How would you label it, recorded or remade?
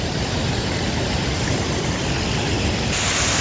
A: recorded